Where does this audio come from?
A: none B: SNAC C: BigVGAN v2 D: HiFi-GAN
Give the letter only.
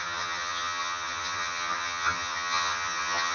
D